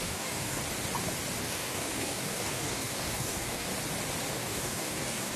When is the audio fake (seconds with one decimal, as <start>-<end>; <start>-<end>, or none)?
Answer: 0.0-0.6; 1.4-3.7; 4.3-5.4

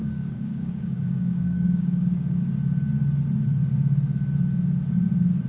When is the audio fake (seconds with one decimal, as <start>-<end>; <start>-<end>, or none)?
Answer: 0.0-2.4

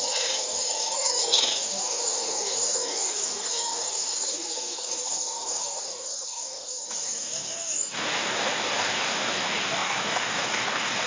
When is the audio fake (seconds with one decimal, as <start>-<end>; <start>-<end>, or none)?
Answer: 0.0-11.1

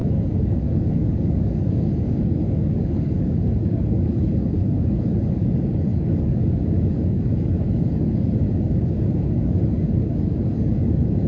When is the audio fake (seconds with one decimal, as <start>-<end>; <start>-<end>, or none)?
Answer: 0.0-11.3

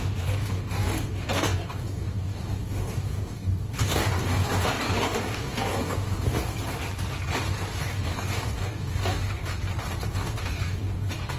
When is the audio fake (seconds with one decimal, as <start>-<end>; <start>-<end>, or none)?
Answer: 0.0-6.5; 7.8-9.5; 10.1-11.4

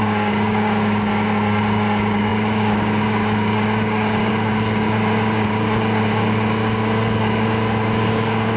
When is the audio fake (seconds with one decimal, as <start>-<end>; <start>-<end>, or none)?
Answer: 0.0-8.6

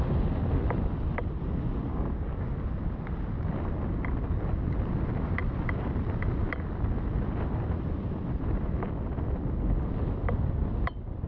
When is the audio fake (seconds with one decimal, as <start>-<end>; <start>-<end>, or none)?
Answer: 1.9-2.5

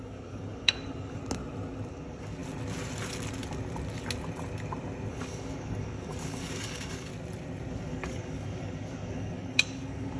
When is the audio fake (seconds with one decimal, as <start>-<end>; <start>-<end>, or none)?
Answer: 0.0-1.2; 1.9-2.4; 5.1-7.1; 7.7-10.2